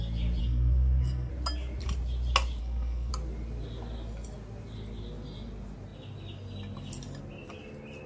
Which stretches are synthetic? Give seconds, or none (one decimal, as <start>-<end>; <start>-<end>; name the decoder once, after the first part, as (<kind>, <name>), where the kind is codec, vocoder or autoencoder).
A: 0.4-1.3 (codec, SNAC); 2.6-3.1